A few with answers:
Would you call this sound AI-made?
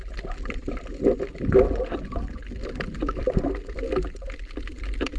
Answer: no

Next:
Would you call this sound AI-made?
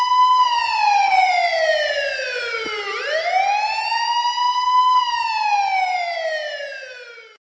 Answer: no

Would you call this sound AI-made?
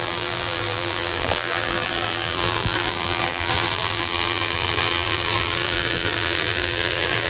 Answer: yes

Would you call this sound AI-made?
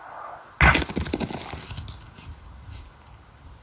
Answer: no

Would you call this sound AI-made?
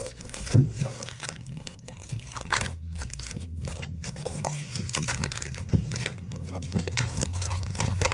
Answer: yes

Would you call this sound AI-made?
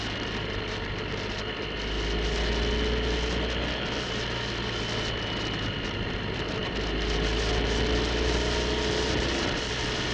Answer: no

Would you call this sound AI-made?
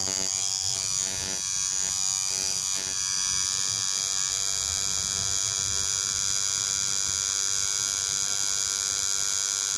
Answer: no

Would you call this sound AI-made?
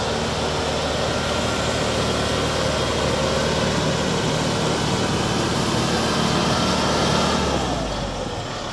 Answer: no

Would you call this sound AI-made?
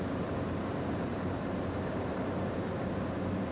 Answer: yes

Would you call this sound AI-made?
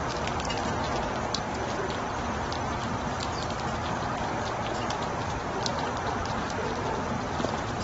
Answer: no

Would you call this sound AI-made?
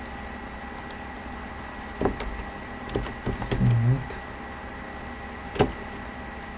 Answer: no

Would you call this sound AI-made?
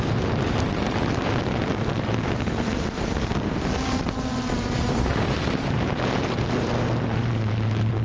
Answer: yes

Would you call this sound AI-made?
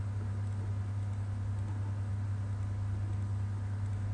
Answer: no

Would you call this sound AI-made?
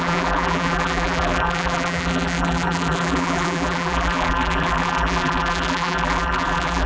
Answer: yes